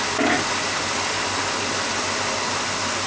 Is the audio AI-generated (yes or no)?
no